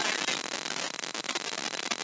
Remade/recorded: recorded